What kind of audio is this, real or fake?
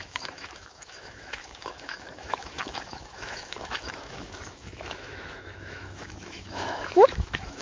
fake